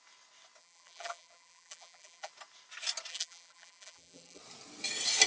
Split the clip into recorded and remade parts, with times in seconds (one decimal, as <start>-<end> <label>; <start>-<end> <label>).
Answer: 0.0-0.6 recorded; 0.6-2.3 remade; 2.3-3.1 recorded; 3.1-4.4 remade; 4.4-5.3 recorded